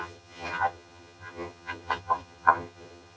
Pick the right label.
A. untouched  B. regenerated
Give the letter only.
B